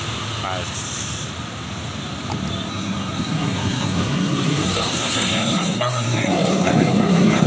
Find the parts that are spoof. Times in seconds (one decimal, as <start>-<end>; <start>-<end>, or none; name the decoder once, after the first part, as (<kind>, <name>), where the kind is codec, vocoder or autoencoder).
2.7-7.5 (codec, SNAC)